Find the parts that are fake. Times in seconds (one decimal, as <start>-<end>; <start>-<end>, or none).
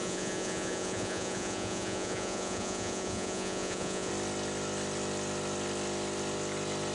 0.0-4.1